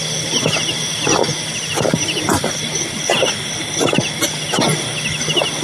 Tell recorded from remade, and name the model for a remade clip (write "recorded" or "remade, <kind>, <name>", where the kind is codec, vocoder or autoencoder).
recorded